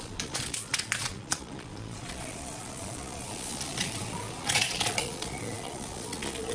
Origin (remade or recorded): remade